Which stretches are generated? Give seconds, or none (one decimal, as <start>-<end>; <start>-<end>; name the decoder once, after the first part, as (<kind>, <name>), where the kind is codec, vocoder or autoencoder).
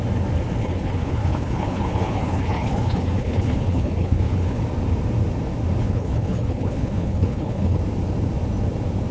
0.6-4.6 (codec, HILCodec); 5.8-7.8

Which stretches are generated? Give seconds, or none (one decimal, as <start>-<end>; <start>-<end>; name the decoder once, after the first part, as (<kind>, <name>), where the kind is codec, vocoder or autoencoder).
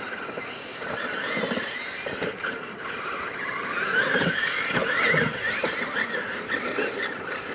0.0-4.8 (vocoder, BigVGAN v2); 5.4-7.5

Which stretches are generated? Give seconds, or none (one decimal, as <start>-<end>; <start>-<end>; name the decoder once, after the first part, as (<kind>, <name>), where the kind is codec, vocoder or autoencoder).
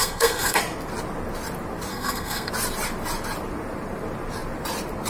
0.0-0.6 (codec, SNAC); 1.9-2.5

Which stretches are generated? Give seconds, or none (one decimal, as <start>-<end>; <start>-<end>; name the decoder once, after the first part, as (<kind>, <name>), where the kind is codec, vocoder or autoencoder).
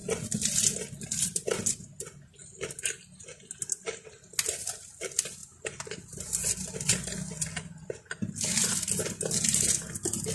none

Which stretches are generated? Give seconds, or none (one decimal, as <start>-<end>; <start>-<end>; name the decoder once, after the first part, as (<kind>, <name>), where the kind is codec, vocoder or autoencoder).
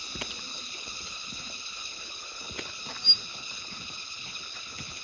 0.5-2.8 (codec, HILCodec); 3.3-5.0